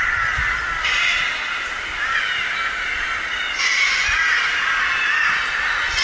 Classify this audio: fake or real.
real